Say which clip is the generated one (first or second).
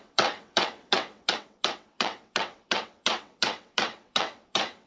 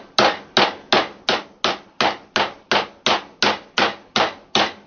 first